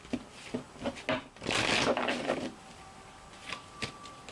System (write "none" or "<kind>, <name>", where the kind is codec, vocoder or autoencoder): none